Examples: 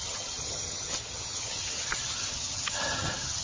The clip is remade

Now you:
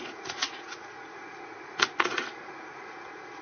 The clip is remade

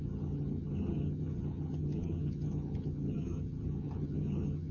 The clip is remade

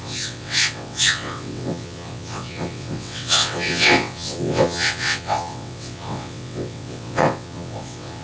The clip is remade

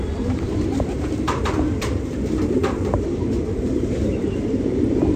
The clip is remade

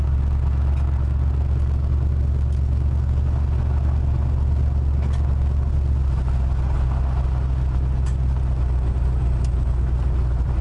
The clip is recorded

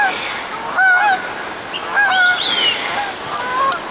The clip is recorded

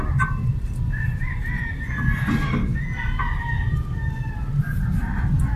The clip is recorded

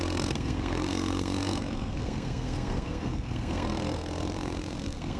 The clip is remade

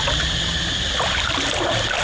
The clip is recorded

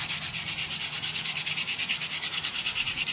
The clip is recorded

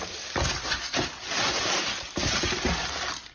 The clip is recorded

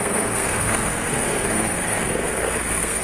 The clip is remade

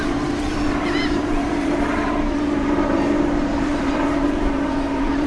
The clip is remade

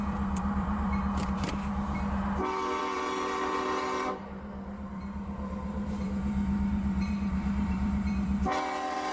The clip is remade